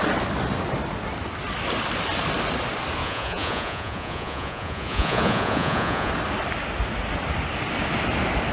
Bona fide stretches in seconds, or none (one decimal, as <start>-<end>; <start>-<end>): 0.0-3.0; 6.1-8.5